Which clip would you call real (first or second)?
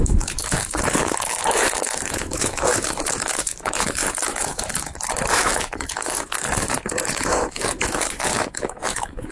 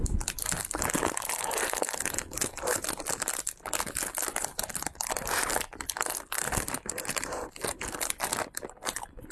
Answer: second